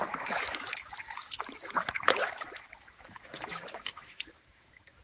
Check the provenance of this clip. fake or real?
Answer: fake